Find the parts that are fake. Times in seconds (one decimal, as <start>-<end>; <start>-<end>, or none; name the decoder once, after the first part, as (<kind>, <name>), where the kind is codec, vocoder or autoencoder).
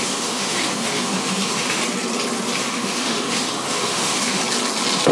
0.0-1.8 (autoencoder, DAC-VAE); 2.6-4.4